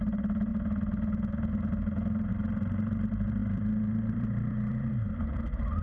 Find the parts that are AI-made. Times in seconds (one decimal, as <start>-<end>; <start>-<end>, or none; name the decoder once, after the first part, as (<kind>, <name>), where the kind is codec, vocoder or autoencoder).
0.0-0.5 (vocoder, BigVGAN v2); 2.3-5.8